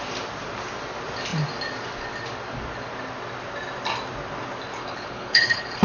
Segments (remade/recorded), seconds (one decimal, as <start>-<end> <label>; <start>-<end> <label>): 0.0-4.8 recorded; 4.8-5.8 remade